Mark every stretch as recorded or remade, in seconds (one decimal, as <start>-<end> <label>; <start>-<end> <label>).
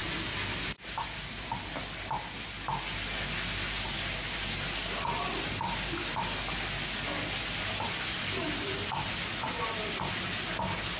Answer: 0.0-11.0 recorded